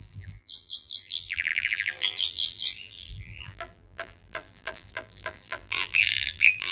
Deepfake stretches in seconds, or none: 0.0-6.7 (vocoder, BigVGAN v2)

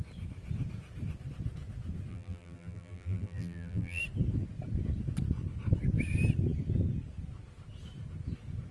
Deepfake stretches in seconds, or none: 2.1-4.0 (vocoder, BigVGAN v2)

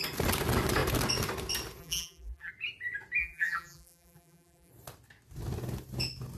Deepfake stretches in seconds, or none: 1.8-2.5 (vocoder, BigVGAN v2); 3.2-4.7

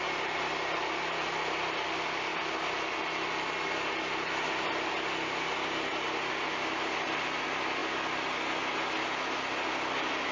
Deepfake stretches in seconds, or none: none

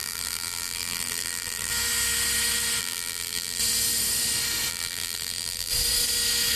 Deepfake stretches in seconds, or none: 0.0-1.7 (vocoder, BigVGAN v2); 2.8-3.6; 4.7-5.7